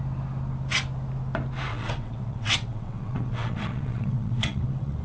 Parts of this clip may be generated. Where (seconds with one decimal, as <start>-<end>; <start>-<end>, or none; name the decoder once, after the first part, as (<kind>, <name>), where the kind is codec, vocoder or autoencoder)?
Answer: 1.7-5.0 (vocoder, WaveNeXt)